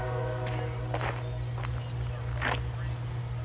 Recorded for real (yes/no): yes